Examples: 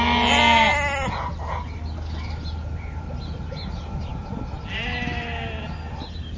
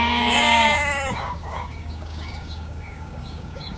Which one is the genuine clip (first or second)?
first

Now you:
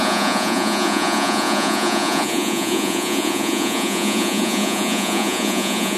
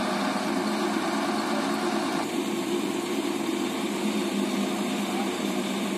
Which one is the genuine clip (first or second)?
second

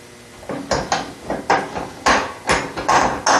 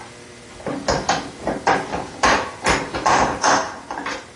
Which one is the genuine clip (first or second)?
first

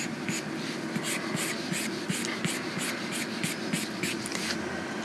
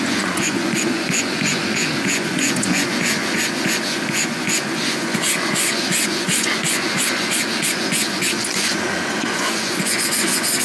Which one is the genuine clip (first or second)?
first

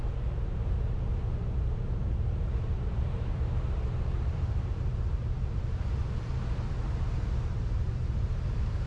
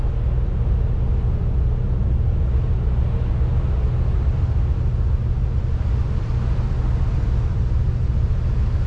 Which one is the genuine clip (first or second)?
second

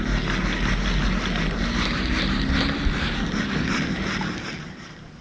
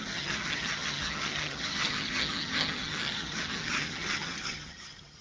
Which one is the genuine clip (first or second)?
first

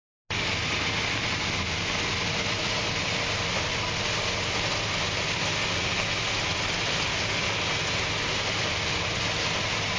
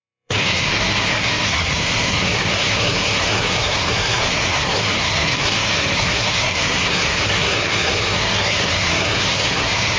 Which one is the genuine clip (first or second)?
first